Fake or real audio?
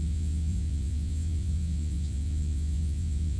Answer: fake